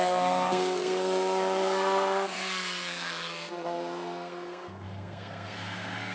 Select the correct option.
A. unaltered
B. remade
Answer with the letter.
B